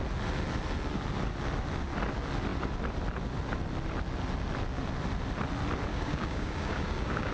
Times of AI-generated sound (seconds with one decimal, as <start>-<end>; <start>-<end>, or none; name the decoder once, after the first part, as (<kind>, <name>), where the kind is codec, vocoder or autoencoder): 5.9-7.3 (codec, DAC)